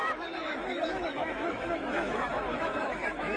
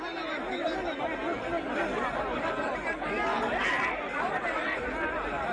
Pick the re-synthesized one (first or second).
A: first